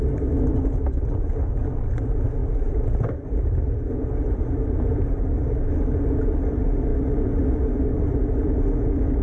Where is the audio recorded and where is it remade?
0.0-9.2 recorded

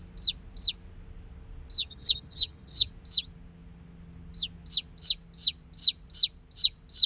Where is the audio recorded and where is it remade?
0.0-1.8 recorded; 1.8-2.9 remade; 2.9-7.1 recorded

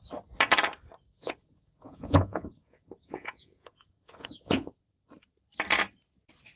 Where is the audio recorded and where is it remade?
0.0-1.1 recorded; 1.1-5.1 remade; 5.1-6.6 recorded

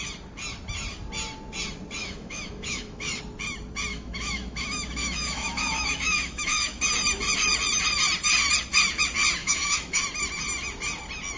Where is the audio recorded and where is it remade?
0.0-2.0 recorded; 2.0-3.2 remade; 3.2-3.9 recorded; 3.9-6.8 remade; 6.8-9.4 recorded; 9.4-10.0 remade; 10.0-11.4 recorded

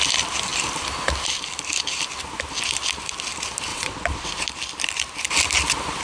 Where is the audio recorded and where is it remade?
0.0-3.7 recorded; 3.7-4.3 remade; 4.3-6.0 recorded